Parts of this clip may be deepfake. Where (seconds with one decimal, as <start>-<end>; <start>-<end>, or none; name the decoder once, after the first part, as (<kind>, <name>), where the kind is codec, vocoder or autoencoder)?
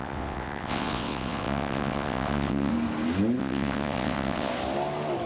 0.0-2.7 (vocoder, WaveNeXt); 3.4-4.5